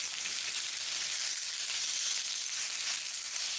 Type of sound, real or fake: real